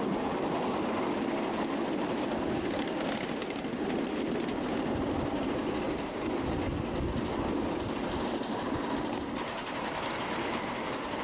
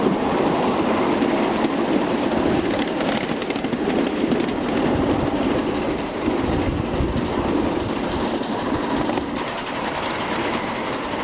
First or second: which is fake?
second